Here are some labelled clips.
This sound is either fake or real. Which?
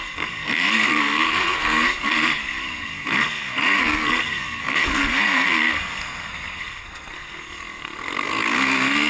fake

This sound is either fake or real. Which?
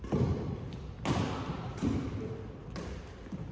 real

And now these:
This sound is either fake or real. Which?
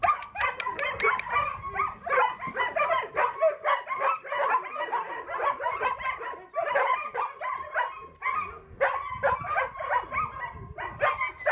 real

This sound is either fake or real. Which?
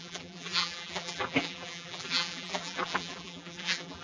fake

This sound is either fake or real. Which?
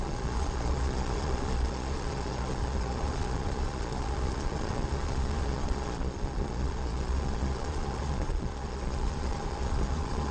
fake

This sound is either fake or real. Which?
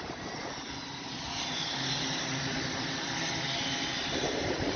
fake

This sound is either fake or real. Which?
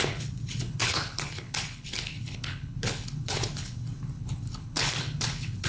fake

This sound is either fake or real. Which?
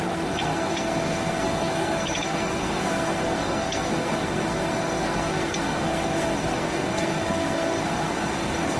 fake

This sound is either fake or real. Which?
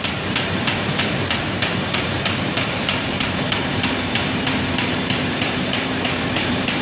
fake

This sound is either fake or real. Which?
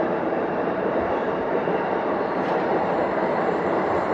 fake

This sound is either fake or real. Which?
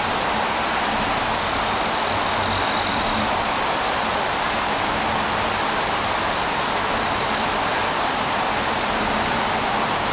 real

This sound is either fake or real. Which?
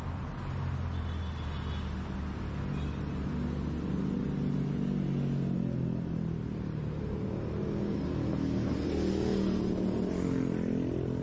real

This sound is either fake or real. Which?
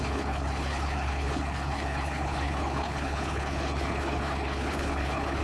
fake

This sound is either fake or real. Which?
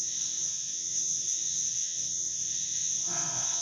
fake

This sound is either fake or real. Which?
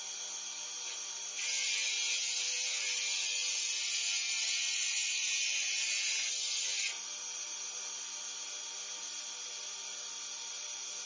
real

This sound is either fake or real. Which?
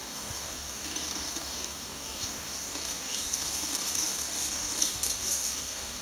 fake